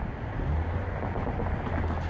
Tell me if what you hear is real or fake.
real